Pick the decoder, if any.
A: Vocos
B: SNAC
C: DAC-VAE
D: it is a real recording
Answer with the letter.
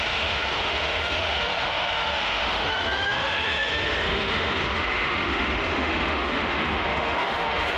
C